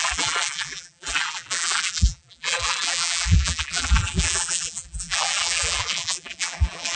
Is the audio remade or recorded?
remade